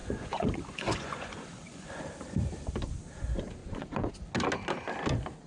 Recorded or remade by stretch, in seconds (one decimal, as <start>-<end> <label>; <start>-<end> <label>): 0.0-2.0 remade; 2.0-3.6 recorded; 3.6-4.1 remade; 4.1-5.5 recorded